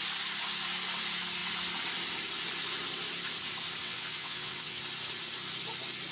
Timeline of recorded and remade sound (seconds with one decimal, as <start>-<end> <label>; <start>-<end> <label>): 0.0-3.8 recorded; 3.8-4.8 remade; 4.8-6.1 recorded